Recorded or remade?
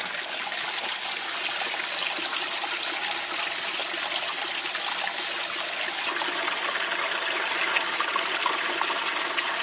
recorded